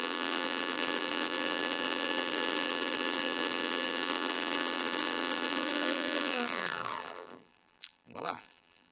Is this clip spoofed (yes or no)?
yes